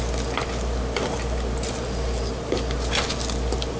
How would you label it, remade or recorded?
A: recorded